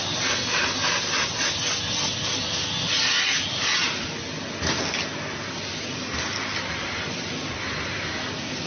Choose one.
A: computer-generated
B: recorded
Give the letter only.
B